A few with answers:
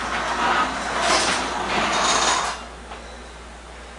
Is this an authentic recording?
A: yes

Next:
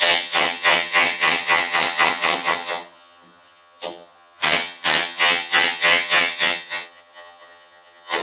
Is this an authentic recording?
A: no